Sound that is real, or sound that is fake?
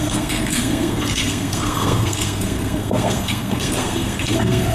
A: fake